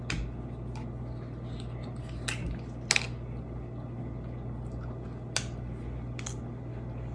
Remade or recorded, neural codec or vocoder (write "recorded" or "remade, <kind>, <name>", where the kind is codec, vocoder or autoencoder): recorded